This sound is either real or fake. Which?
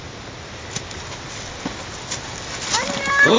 real